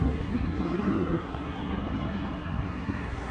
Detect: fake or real fake